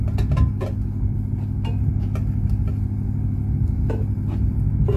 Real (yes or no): yes